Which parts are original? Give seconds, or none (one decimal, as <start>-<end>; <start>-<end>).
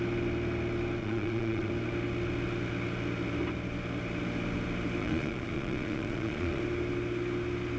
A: 0.0-1.0; 1.7-5.0; 6.6-7.8